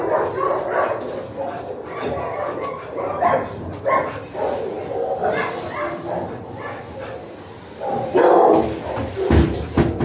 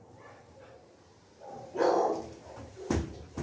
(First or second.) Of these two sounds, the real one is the first